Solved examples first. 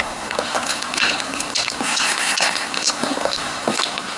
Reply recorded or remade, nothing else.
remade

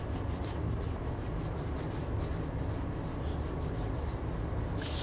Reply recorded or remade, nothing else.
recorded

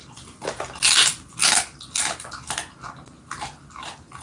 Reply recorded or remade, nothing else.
recorded